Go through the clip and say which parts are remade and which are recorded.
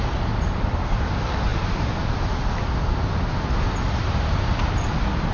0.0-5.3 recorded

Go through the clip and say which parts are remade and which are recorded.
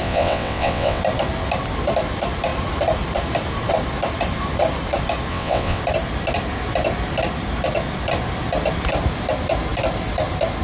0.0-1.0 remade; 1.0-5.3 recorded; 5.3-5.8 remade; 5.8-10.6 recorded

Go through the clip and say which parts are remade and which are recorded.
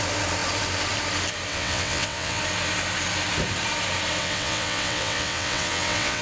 0.0-1.5 recorded; 1.5-2.4 remade; 2.4-4.2 recorded; 4.2-6.2 remade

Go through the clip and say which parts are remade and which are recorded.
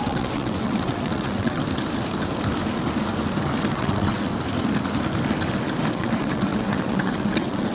0.0-1.6 remade; 1.6-3.7 recorded; 3.7-4.3 remade; 4.3-5.9 recorded; 5.9-7.7 remade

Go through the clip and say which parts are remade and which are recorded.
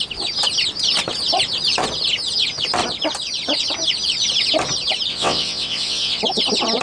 0.0-5.1 recorded; 5.1-6.2 remade; 6.2-6.8 recorded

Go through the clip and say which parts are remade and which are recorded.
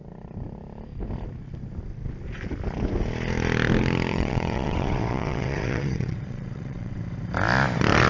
0.0-4.1 recorded; 4.1-7.0 remade; 7.0-8.1 recorded